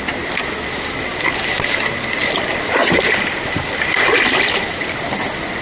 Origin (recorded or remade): recorded